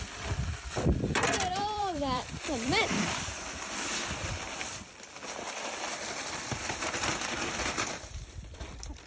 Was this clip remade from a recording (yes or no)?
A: yes